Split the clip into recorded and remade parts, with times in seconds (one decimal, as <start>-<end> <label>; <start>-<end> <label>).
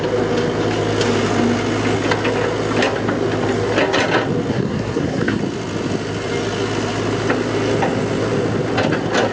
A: 0.0-4.5 recorded; 4.5-5.4 remade; 5.4-9.3 recorded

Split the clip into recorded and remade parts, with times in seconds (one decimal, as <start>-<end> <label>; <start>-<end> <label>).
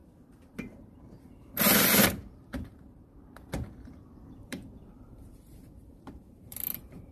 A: 0.0-7.1 remade